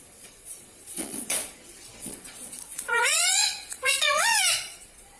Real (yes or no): no